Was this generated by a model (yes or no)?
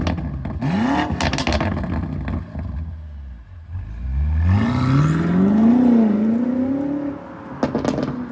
no